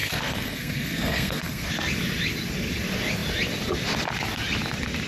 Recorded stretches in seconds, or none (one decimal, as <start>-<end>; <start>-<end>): 1.7-5.1